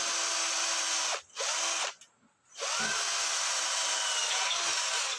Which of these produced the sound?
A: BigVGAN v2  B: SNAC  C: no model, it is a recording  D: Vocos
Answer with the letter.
C